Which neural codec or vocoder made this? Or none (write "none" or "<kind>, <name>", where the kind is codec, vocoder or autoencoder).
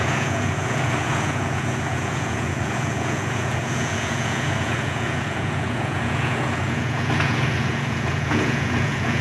vocoder, Vocos